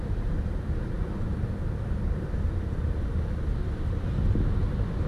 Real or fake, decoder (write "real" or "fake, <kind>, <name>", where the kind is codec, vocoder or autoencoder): fake, vocoder, BigVGAN v2